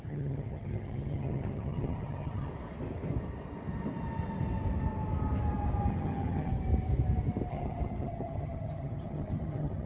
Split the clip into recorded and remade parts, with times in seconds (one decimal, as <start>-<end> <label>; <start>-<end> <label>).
0.0-2.5 remade; 2.5-5.9 recorded; 5.9-6.5 remade; 6.5-7.5 recorded; 7.5-9.9 remade